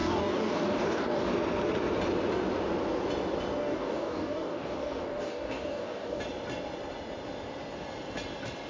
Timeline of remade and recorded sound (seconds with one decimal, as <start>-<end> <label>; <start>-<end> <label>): 0.0-1.3 remade; 1.3-3.6 recorded; 3.6-6.2 remade; 6.2-8.7 recorded